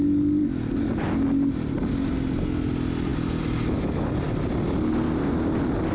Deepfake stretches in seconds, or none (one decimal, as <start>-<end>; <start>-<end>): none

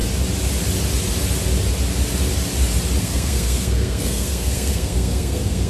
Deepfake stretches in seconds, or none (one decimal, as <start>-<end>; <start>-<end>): 3.0-5.7

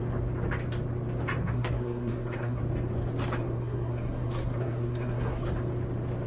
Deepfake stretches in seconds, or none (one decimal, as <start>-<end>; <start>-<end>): 1.4-2.6; 3.4-5.5

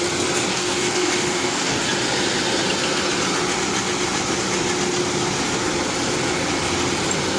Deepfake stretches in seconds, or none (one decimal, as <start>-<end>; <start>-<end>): 0.5-1.8

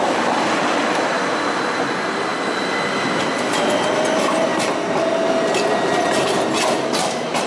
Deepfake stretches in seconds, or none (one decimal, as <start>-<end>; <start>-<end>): none